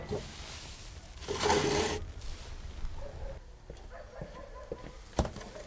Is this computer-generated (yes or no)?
no